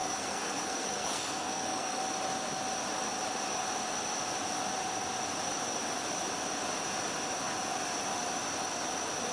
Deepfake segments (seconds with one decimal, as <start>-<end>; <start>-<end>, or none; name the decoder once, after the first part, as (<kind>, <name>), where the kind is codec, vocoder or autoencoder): 0.0-2.0 (codec, SNAC)